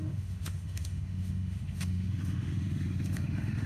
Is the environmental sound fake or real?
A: fake